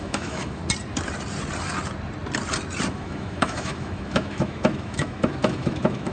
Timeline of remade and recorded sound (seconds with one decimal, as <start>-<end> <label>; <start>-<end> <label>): 0.0-0.6 remade; 0.6-2.9 recorded; 2.9-6.1 remade